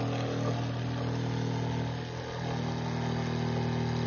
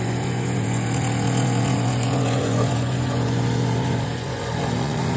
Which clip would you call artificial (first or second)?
second